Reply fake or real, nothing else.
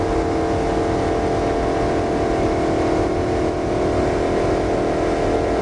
real